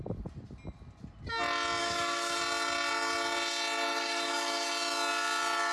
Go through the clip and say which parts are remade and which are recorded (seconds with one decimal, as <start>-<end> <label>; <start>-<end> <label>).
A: 0.0-1.8 recorded; 1.8-2.4 remade; 2.4-3.9 recorded; 3.9-4.7 remade; 4.7-5.7 recorded